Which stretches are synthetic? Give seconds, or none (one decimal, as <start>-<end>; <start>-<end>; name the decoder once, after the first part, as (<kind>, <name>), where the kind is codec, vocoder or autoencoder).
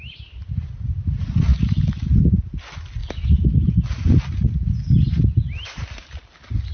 none